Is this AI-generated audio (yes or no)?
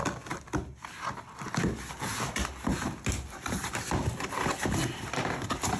no